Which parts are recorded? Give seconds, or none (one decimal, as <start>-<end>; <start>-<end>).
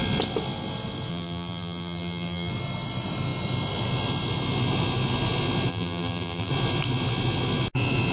0.0-1.1; 2.5-5.7; 6.5-8.1